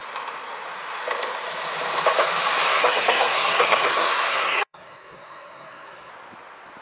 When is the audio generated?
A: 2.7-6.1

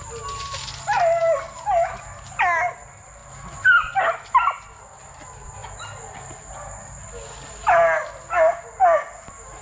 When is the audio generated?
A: none

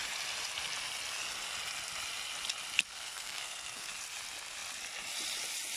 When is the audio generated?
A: 2.9-3.9

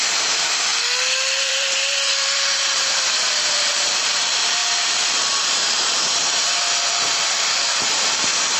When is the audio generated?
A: 0.0-0.7; 1.4-8.6

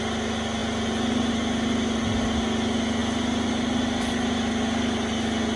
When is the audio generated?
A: none

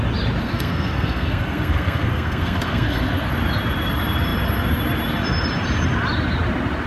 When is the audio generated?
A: 0.4-3.3

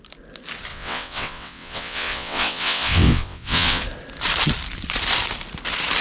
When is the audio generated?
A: 0.7-3.8

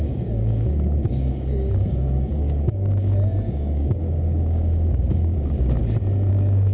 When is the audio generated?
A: 0.0-5.8; 6.3-6.7